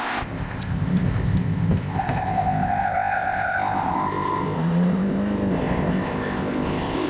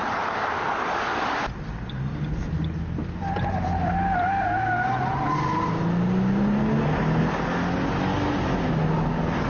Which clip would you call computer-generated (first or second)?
first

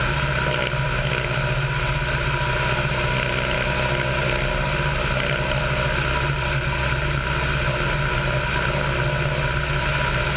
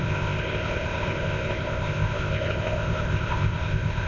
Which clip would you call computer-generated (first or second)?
second